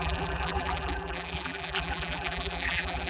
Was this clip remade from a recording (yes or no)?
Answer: yes